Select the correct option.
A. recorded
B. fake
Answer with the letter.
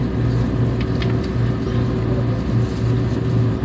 A